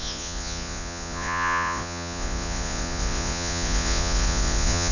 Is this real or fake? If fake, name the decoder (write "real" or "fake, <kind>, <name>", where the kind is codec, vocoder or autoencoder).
fake, vocoder, Vocos